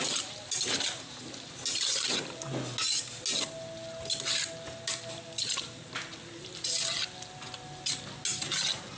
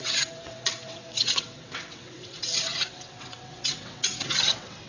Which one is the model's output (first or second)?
second